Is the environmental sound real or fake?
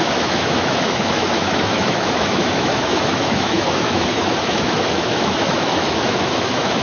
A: fake